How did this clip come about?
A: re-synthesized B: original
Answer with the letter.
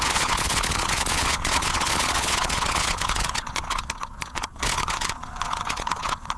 A